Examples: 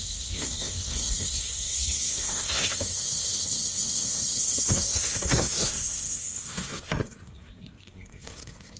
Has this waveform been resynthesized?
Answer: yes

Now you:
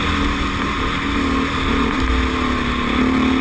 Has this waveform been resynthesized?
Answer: no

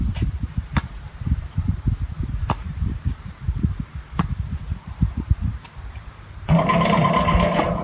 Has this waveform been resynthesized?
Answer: yes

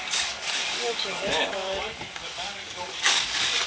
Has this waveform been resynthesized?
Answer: yes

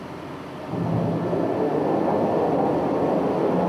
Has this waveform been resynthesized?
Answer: no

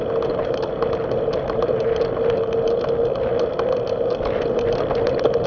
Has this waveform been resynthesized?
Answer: no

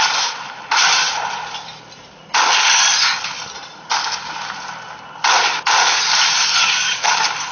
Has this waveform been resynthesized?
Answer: no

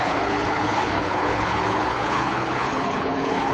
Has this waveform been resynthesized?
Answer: yes